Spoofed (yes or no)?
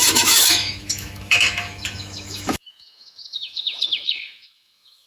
yes